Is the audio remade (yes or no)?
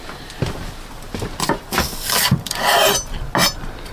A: no